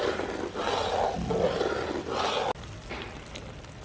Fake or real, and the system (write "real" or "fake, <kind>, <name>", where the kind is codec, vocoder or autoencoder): real